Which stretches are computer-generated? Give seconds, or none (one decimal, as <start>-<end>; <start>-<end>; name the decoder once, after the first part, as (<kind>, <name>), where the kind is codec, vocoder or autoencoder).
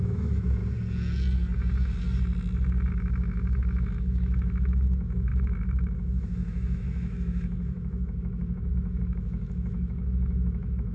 0.0-0.6 (autoencoder, DAC-VAE); 2.9-10.9